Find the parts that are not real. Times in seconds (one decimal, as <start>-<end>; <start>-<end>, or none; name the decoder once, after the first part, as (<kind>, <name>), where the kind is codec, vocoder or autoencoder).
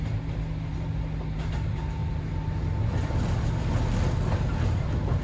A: none